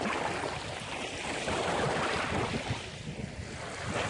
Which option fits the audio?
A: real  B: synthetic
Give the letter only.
A